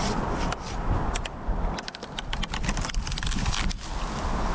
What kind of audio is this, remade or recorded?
recorded